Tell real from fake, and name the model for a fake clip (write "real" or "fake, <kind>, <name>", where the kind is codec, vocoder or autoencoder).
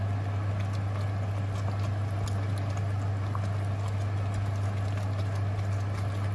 real